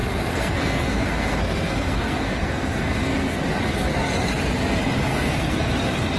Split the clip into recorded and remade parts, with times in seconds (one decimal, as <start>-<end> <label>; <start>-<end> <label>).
0.0-3.6 remade; 3.6-5.1 recorded; 5.1-5.7 remade; 5.7-6.2 recorded